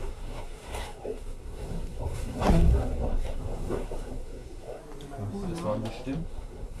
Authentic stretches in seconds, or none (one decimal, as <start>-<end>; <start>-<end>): 4.8-6.2